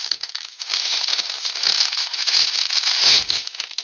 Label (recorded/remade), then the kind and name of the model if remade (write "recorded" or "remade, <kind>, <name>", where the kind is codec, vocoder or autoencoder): remade, autoencoder, DAC-VAE